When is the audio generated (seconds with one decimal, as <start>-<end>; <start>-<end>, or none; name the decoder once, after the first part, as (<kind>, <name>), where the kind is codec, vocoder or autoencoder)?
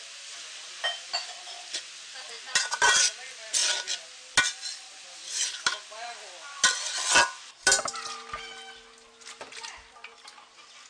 none